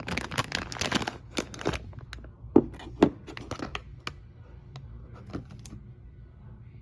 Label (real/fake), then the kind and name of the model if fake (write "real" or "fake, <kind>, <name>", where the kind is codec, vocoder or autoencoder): real